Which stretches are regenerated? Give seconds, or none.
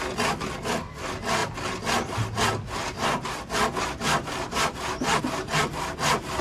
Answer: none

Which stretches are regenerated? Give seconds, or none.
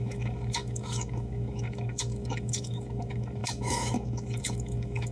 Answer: 0.0-5.1 (autoencoder, DAC-VAE)